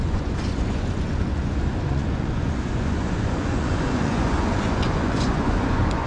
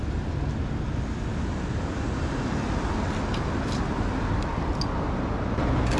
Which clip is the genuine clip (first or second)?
second